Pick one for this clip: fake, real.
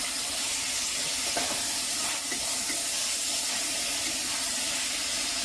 real